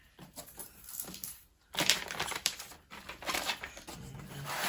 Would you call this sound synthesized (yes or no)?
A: yes